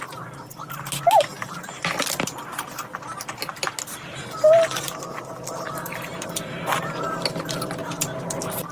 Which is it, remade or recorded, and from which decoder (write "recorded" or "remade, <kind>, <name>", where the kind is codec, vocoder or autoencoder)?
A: recorded